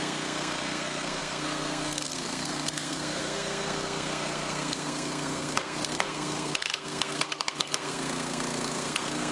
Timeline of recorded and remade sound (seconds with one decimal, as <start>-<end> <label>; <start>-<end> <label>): 0.0-9.3 remade